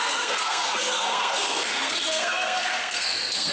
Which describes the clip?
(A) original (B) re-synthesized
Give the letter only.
B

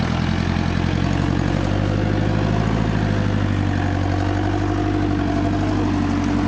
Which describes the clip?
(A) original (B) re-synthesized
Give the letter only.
A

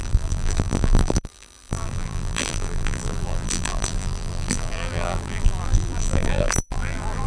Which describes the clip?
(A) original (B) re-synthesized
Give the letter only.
B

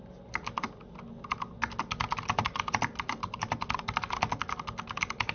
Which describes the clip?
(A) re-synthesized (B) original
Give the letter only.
B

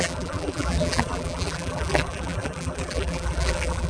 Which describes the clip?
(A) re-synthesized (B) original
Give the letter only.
A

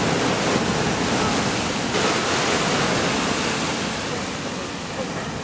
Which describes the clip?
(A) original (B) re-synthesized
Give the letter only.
A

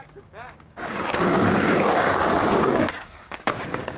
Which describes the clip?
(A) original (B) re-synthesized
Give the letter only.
B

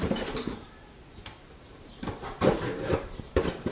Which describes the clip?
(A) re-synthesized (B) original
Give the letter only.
A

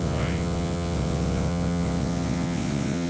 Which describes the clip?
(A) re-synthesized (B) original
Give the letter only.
A